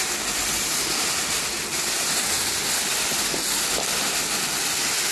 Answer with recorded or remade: recorded